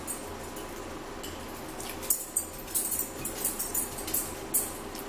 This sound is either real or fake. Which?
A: real